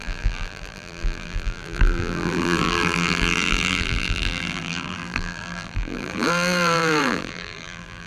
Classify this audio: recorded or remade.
remade